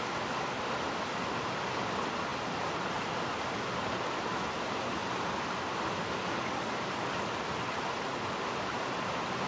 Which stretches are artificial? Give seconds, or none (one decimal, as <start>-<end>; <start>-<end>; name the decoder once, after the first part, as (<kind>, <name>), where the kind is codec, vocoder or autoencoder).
none

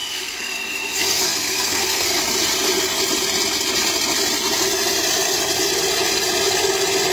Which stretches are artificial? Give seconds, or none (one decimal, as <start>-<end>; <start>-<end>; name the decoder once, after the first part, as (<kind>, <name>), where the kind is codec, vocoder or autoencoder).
0.0-2.2 (codec, SNAC)